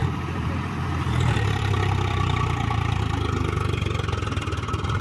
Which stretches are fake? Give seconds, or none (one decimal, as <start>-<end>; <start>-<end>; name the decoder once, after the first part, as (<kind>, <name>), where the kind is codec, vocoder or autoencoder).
0.0-3.0 (vocoder, BigVGAN v2)